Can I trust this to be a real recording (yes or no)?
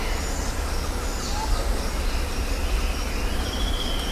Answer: yes